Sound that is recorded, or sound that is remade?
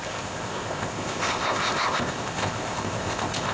remade